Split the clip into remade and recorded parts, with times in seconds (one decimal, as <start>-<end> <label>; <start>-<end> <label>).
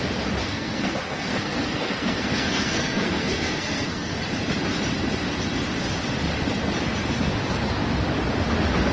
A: 0.0-0.4 recorded; 0.4-4.2 remade; 4.2-8.9 recorded